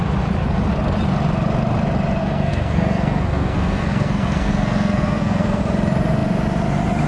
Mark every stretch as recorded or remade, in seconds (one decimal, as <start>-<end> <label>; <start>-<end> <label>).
0.0-2.2 recorded; 2.2-5.6 remade; 5.6-7.1 recorded